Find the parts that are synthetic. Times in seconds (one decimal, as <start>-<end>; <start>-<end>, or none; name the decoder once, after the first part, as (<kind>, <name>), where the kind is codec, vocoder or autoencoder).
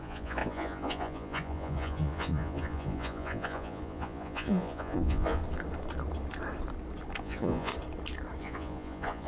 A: 0.0-5.4 (vocoder, Vocos); 7.2-7.7; 8.4-9.3